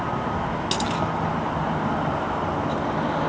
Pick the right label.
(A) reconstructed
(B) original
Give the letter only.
B